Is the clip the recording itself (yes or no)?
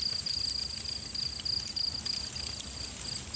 yes